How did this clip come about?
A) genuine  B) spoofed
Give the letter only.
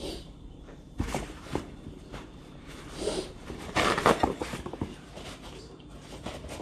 B